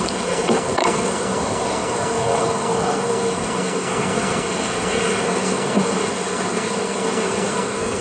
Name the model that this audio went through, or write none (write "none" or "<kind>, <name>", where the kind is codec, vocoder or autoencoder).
codec, SNAC